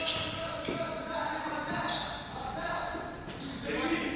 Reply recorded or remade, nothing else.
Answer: recorded